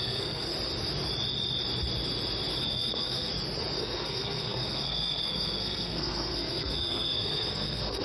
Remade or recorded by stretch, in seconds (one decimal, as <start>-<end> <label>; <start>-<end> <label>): 0.0-0.5 remade; 0.5-2.6 recorded; 2.6-3.3 remade; 3.3-3.8 recorded; 3.8-8.0 remade